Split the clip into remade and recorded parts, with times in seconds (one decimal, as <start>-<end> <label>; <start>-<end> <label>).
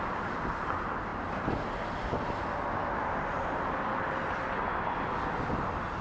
0.0-6.0 recorded